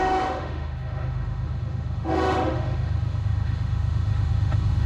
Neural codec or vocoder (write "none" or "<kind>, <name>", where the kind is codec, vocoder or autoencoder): autoencoder, DAC-VAE